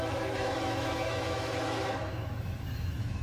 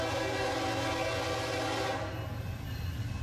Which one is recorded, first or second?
second